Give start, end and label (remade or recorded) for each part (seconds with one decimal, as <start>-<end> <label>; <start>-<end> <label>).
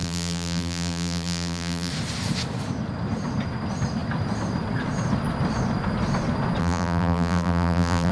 0.0-1.9 remade; 1.9-6.6 recorded; 6.6-8.1 remade